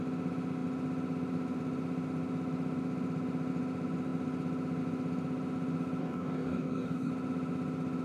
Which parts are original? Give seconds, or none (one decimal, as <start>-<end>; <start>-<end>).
0.0-6.0; 7.1-8.0

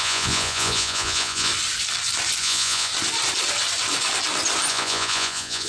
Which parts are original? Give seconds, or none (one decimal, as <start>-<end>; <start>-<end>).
1.5-2.4; 2.9-4.7